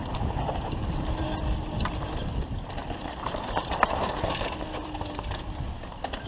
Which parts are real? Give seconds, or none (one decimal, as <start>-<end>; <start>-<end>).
1.2-6.3